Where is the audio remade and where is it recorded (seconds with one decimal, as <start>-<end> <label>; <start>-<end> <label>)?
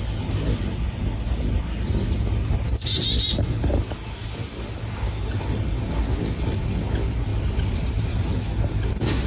0.0-9.3 recorded